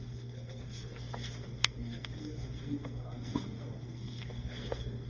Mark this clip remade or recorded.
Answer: remade